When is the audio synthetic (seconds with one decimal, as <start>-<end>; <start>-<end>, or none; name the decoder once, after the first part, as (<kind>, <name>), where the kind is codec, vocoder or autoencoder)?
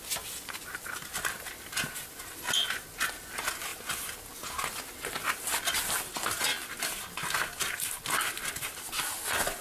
none